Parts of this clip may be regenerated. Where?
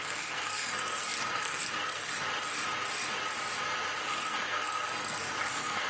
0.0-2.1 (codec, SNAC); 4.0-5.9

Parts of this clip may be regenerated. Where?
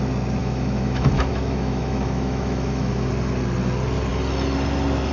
0.4-3.1 (autoencoder, DAC-VAE)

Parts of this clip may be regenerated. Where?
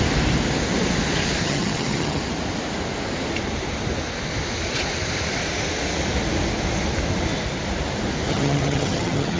1.4-2.2 (vocoder, HiFi-GAN); 8.3-9.4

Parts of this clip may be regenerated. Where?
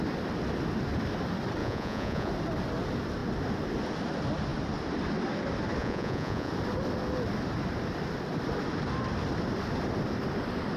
1.6-2.3 (vocoder, Vocos); 5.8-6.5